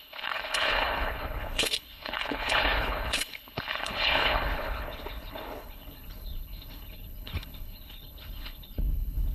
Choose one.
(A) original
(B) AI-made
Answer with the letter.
B